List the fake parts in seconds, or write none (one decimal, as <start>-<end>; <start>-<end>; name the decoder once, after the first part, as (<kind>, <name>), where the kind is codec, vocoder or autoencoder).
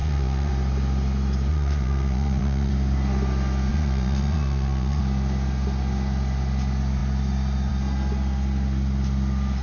0.0-0.5 (vocoder, Vocos); 1.5-2.7; 3.7-5.0